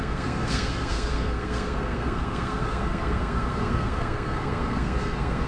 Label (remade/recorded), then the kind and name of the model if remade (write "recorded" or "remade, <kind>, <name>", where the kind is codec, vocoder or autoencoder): remade, codec, SNAC